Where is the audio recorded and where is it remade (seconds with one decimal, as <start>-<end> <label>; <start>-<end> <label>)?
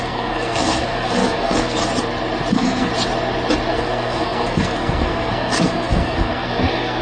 0.0-1.8 remade; 1.8-2.5 recorded; 2.5-2.9 remade; 2.9-3.7 recorded; 3.7-7.0 remade